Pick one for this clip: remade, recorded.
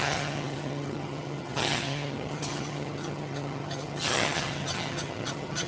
remade